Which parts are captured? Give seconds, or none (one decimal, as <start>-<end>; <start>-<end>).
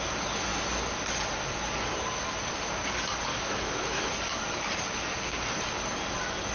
0.0-3.3; 4.0-6.5